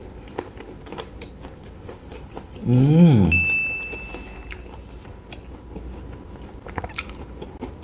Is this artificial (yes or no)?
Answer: no